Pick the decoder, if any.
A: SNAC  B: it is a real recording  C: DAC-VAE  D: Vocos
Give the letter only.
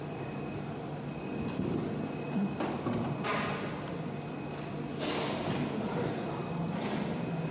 B